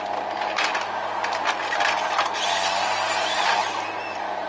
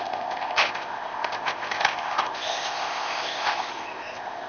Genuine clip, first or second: first